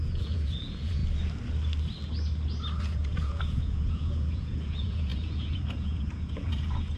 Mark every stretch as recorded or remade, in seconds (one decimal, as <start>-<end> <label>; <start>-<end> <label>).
0.0-1.0 remade; 1.0-2.8 recorded; 2.8-7.0 remade

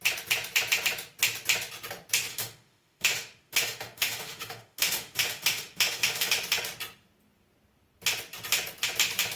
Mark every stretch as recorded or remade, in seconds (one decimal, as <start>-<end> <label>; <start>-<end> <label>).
0.0-2.3 recorded; 2.3-6.3 remade; 6.3-9.4 recorded

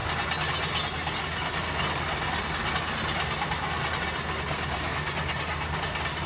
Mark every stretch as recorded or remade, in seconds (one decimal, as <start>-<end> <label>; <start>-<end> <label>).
0.0-6.3 recorded

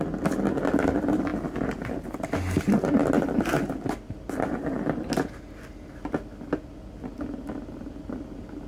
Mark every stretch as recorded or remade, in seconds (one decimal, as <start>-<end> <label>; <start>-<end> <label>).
0.0-3.0 recorded; 3.0-5.1 remade; 5.1-8.7 recorded

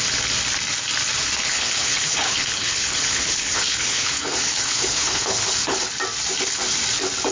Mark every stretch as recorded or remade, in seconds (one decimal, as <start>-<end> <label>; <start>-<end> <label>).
0.0-1.5 recorded; 1.5-5.9 remade; 5.9-7.3 recorded

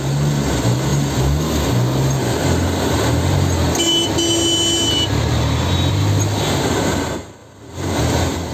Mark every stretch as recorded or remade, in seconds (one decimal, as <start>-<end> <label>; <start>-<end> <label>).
0.0-8.5 recorded

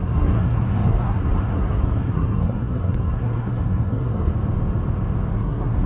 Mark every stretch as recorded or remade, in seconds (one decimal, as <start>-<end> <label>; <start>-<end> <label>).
0.0-4.3 remade; 4.3-5.3 recorded; 5.3-5.9 remade